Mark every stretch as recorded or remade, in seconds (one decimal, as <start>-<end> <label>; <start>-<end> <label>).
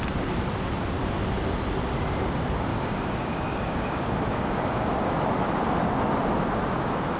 0.0-2.7 recorded; 2.7-5.1 remade; 5.1-7.2 recorded